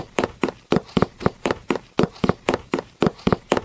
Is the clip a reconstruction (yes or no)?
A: yes